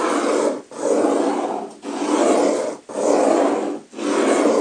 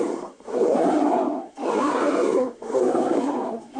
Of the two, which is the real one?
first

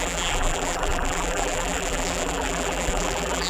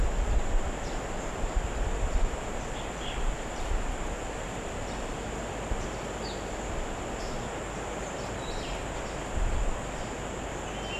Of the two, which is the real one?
second